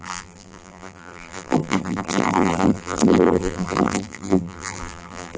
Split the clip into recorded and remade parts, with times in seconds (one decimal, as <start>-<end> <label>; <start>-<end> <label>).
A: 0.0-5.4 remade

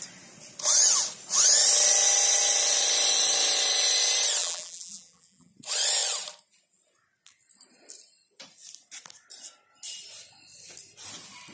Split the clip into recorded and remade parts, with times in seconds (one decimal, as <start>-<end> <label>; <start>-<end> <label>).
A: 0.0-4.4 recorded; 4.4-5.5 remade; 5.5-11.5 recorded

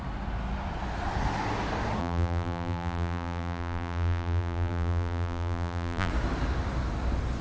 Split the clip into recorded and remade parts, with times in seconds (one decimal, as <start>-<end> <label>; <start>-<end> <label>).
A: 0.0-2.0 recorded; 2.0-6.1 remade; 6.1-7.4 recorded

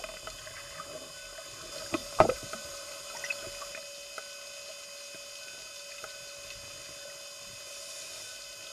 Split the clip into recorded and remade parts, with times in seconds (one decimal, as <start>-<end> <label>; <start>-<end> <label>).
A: 0.0-2.0 recorded; 2.0-3.1 remade; 3.1-8.7 recorded